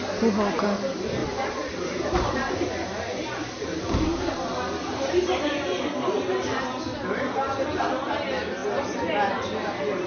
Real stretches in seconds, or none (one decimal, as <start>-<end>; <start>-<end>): 0.0-1.2; 2.7-3.4; 4.3-6.9; 7.8-10.1